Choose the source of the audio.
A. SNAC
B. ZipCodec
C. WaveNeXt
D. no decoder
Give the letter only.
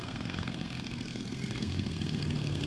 A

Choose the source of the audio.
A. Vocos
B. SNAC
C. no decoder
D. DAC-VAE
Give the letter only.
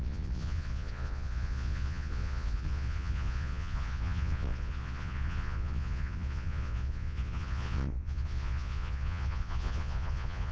A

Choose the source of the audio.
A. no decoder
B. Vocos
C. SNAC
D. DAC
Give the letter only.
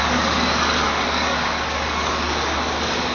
D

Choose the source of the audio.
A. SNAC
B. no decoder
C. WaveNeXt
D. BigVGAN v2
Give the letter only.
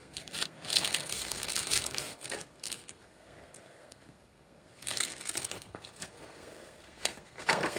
A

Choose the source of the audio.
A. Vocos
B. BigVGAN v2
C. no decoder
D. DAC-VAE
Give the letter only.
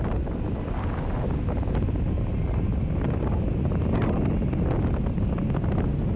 C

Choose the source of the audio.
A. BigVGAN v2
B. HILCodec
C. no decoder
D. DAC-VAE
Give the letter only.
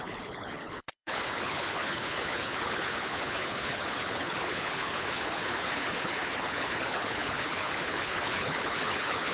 B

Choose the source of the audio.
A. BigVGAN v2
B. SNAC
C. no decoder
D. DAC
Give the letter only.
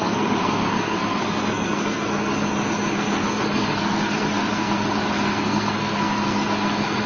B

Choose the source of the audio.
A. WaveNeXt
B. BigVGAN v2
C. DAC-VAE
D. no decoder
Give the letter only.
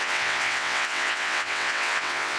A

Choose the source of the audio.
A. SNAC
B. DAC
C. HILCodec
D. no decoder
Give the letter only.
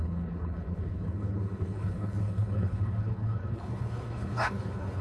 C